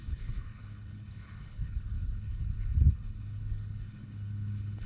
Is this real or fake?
fake